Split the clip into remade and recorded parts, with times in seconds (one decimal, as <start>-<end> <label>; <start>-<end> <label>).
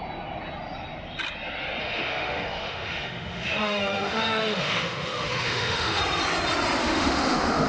0.0-1.8 recorded; 1.8-6.0 remade; 6.0-6.8 recorded; 6.8-7.7 remade